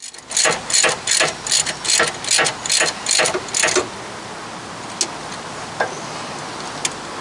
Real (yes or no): yes